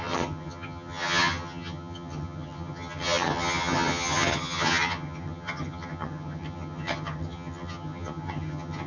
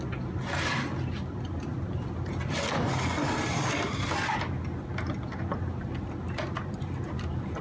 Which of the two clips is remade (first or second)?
first